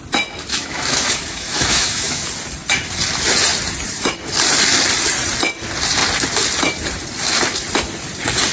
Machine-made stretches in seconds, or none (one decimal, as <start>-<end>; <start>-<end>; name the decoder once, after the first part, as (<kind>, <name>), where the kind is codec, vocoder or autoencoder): 0.5-2.2 (autoencoder, DAC-VAE)